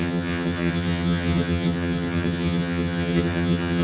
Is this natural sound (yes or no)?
no